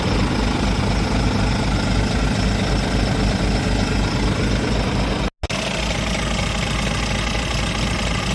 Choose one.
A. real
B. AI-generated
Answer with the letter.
A